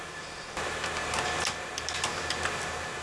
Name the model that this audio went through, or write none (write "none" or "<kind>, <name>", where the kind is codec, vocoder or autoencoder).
none